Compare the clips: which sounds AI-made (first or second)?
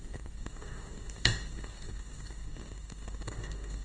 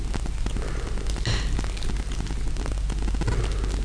first